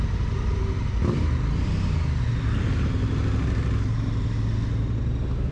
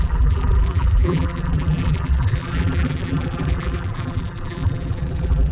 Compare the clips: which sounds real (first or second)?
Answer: first